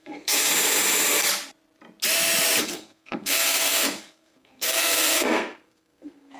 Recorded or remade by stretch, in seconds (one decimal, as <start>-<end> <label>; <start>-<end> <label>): 0.0-0.5 remade; 0.5-2.6 recorded; 2.6-6.4 remade